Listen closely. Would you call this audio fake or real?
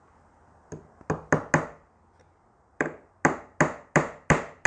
real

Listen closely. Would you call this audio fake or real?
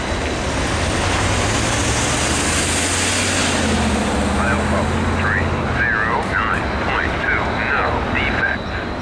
real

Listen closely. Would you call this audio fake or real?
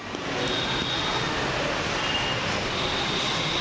real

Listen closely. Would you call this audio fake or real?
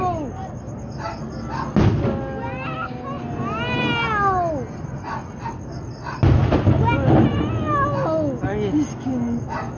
real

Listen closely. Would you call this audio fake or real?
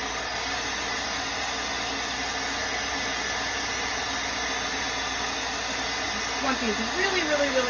real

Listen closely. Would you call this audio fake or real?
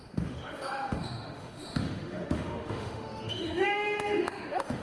fake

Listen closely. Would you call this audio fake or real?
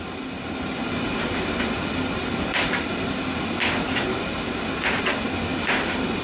real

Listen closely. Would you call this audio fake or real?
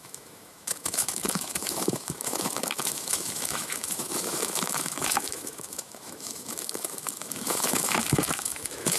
fake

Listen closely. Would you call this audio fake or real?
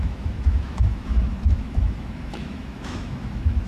fake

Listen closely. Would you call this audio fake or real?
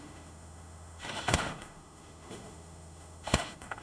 fake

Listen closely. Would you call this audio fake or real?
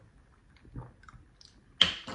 real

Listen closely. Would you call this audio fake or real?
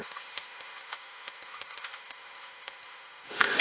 fake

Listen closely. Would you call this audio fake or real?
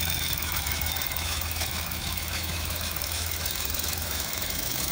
fake